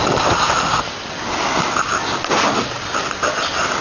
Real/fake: real